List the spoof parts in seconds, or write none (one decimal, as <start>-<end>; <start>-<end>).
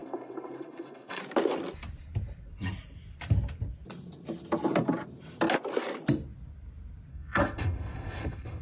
0.0-1.2; 7.1-8.6